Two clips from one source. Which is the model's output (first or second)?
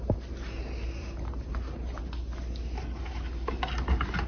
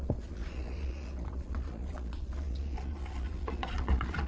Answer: second